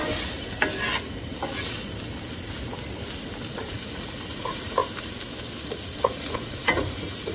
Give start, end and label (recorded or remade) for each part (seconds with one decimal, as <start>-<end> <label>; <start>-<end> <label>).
0.0-3.5 recorded; 3.5-4.8 remade; 4.8-6.0 recorded; 6.0-7.3 remade

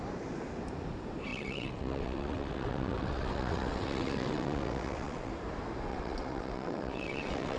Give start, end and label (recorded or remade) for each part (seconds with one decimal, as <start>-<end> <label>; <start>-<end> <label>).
0.0-1.3 recorded; 1.3-5.3 remade; 5.3-5.9 recorded; 5.9-7.6 remade

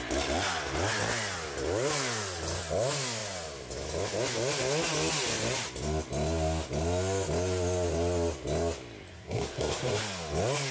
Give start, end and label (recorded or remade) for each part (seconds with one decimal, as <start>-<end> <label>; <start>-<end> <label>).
0.0-9.1 recorded; 9.1-10.0 remade; 10.0-10.7 recorded

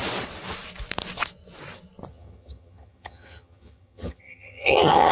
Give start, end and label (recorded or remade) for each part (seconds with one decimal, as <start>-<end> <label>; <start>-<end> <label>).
0.0-2.1 recorded; 2.1-5.1 remade

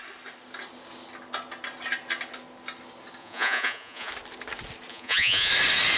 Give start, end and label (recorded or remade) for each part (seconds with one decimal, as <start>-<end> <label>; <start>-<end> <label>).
0.0-3.2 recorded; 3.2-4.1 remade; 4.1-4.9 recorded; 4.9-5.5 remade; 5.5-6.0 recorded

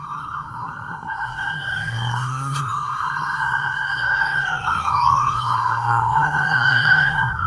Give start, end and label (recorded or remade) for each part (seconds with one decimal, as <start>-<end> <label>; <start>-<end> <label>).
0.0-7.5 remade